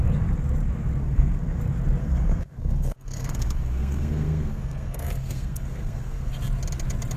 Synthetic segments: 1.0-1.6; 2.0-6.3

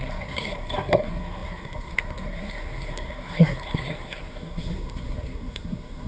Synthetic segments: 0.0-6.1

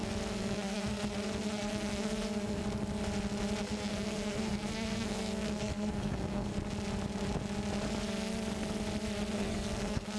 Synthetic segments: 0.0-2.6; 3.6-6.5; 9.3-10.2

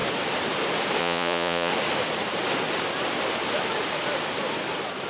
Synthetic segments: 1.0-1.7

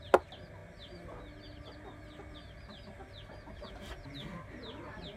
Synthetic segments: none

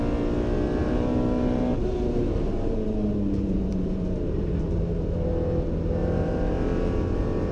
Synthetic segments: 0.8-5.3; 6.0-7.5

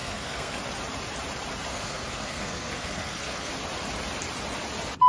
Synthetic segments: 0.0-0.6; 1.7-3.5

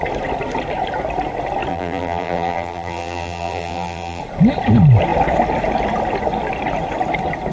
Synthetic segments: 1.7-4.2